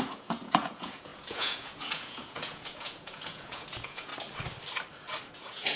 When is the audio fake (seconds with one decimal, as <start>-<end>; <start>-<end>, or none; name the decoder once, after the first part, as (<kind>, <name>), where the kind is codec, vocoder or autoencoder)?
0.0-4.1 (vocoder, Vocos); 5.3-5.8